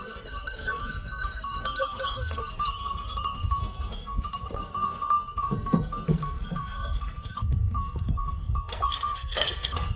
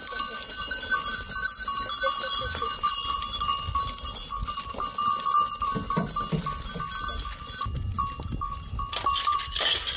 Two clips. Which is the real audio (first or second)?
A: second